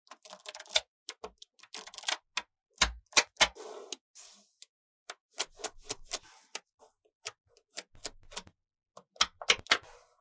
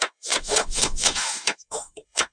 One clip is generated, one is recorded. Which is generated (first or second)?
second